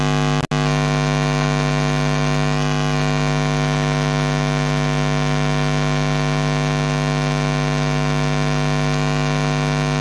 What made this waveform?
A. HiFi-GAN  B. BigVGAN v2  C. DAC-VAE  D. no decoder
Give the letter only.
D